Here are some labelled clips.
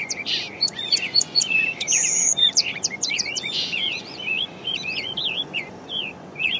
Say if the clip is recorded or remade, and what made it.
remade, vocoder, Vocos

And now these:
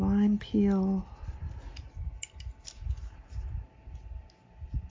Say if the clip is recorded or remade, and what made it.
recorded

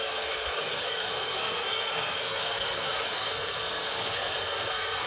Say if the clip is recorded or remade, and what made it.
remade, codec, SNAC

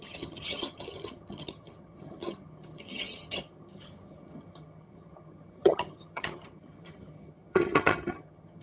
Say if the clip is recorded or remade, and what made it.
remade, vocoder, HiFi-GAN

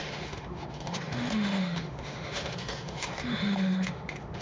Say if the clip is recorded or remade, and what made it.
remade, autoencoder, DAC-VAE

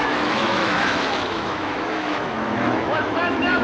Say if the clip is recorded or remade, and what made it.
remade, autoencoder, DAC-VAE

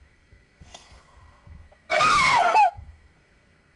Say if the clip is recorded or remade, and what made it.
remade, codec, SNAC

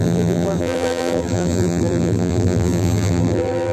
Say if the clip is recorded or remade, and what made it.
remade, vocoder, BigVGAN v2